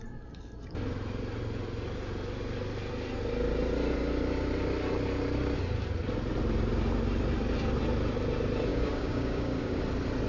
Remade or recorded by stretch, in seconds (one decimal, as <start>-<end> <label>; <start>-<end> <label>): 0.0-8.7 recorded; 8.7-9.8 remade; 9.8-10.3 recorded